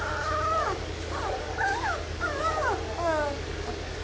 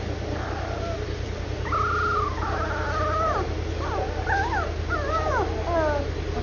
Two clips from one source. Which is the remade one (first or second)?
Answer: first